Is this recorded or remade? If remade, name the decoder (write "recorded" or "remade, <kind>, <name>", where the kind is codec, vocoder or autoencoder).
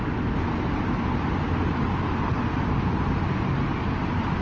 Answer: recorded